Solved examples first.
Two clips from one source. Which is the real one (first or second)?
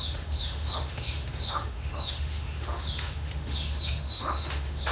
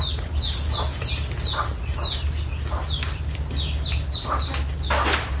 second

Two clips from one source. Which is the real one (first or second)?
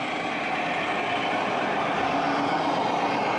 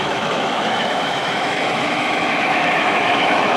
first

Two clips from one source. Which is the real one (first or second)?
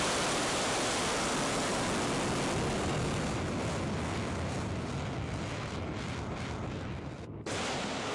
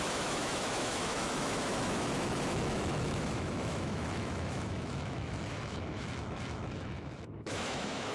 first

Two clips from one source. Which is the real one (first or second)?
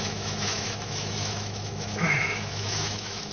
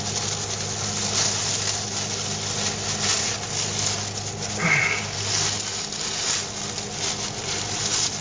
second